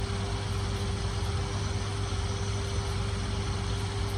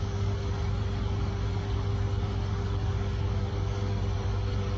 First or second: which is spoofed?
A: second